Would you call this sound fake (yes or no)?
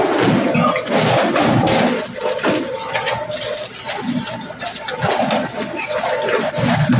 no